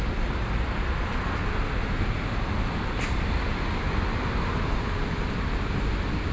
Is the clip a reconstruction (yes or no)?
no